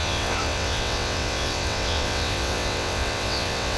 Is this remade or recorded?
remade